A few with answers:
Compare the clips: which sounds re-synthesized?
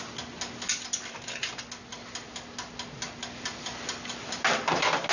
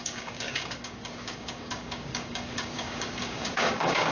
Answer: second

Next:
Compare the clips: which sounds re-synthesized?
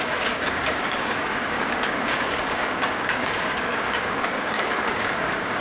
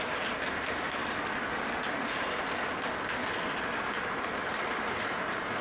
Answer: first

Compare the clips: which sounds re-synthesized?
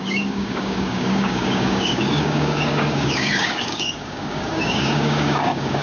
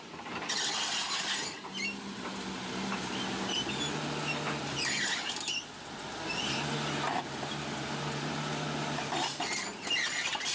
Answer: first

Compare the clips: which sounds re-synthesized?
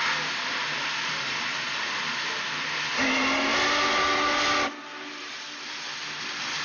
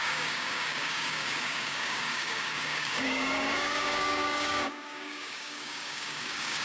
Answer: second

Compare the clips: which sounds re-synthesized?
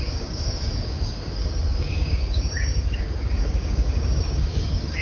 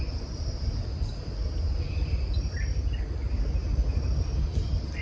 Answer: first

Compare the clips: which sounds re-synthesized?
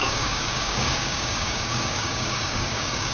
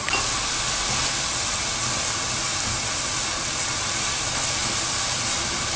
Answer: first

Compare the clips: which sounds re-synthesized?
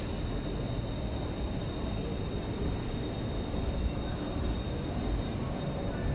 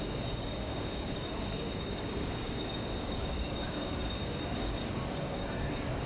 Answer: second